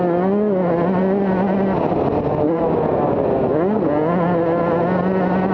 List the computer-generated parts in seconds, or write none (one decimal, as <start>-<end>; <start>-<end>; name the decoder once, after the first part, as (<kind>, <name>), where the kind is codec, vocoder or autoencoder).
none

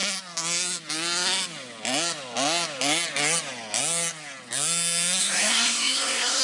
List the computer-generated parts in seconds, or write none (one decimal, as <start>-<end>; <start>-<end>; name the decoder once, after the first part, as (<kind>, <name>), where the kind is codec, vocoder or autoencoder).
5.2-6.4 (codec, SNAC)

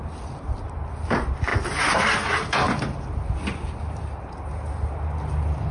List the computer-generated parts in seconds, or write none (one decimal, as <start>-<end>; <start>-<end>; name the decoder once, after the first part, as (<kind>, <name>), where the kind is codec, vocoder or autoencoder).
none